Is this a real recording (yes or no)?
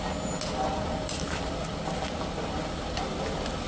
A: yes